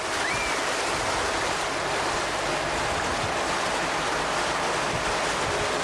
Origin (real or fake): real